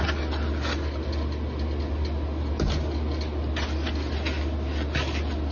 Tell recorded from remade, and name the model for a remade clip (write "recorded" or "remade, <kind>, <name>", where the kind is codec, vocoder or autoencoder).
recorded